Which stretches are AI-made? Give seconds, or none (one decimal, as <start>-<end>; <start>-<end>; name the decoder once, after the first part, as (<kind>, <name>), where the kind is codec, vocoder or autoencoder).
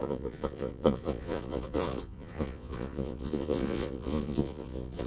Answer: 0.0-5.1 (vocoder, Vocos)